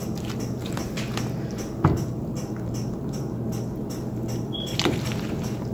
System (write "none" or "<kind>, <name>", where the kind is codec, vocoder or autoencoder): none